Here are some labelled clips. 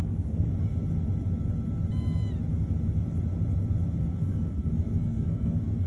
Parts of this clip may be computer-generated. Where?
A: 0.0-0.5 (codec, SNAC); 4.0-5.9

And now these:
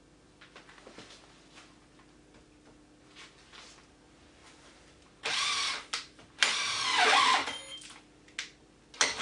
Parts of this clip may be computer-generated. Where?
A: 4.4-6.8 (vocoder, BigVGAN v2)

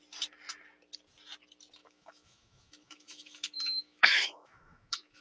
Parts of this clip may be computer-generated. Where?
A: 1.8-5.2 (autoencoder, DAC-VAE)

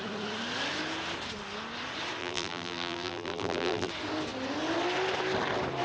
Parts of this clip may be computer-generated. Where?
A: 2.2-3.9 (vocoder, BigVGAN v2)

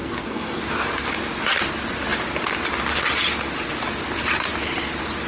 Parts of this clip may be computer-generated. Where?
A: 0.0-0.6 (codec, SNAC)

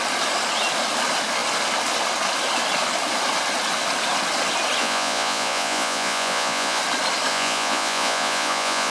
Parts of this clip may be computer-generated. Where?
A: 4.8-6.8 (vocoder, Vocos); 7.3-8.9